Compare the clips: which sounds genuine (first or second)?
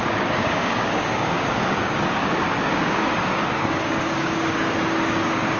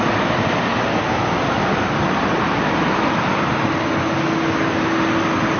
second